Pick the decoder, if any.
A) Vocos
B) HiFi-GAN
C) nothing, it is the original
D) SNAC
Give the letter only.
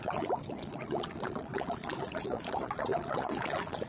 A